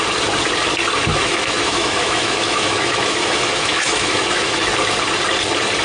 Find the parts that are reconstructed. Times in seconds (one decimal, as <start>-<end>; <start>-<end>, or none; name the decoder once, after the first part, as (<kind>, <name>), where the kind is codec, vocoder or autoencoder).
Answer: 1.1-4.6 (autoencoder, DAC-VAE)

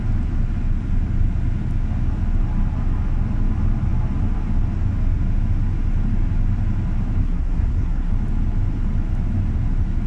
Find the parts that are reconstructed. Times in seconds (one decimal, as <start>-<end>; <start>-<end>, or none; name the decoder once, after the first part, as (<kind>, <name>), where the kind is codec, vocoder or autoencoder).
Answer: 7.2-8.1 (codec, SNAC)

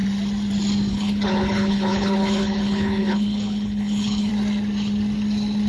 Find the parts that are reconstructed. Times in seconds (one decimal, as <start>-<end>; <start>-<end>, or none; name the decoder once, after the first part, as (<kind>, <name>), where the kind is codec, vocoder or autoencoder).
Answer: 0.9-4.3 (codec, HILCodec)